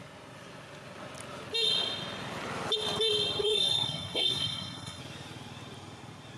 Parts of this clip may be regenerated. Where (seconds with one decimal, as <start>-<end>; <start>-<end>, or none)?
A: 3.4-5.0